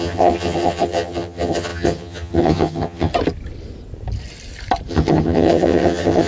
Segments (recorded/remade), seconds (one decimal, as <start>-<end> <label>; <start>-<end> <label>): 0.0-3.1 remade; 3.1-4.9 recorded; 4.9-6.3 remade